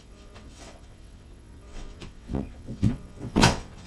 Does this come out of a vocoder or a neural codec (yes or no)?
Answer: yes